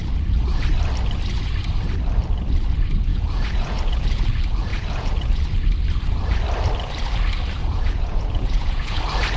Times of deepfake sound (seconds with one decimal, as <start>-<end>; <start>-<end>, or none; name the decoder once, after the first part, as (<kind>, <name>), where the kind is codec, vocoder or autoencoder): 3.1-4.2 (vocoder, Vocos); 4.7-5.4; 7.6-9.0